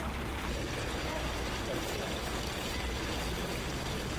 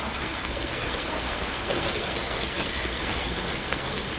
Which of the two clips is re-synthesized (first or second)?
second